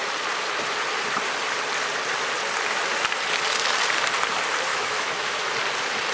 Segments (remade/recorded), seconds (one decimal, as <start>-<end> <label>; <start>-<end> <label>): 0.0-4.7 recorded; 4.7-5.5 remade; 5.5-6.1 recorded